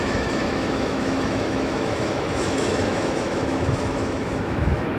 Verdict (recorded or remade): remade